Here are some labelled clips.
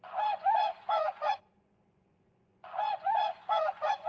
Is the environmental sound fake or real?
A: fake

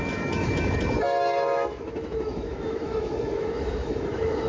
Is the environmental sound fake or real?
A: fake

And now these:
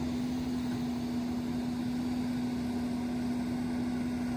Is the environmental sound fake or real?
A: real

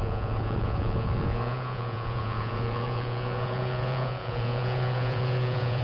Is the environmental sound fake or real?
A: fake